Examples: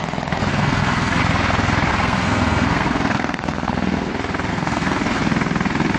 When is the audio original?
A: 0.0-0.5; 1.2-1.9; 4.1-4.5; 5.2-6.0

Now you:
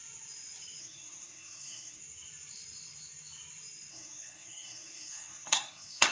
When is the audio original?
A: 0.0-0.8; 2.0-3.9

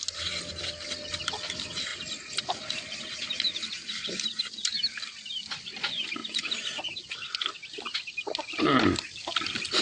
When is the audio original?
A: 0.0-9.8